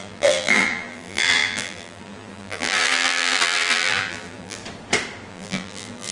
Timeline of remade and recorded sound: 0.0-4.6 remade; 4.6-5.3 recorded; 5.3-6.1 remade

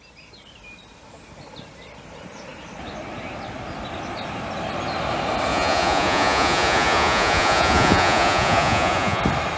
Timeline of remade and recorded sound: 0.0-5.5 recorded; 5.5-9.2 remade; 9.2-9.6 recorded